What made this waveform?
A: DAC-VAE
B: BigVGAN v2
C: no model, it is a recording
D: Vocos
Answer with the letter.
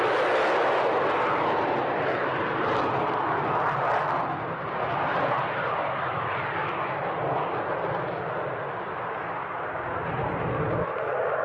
C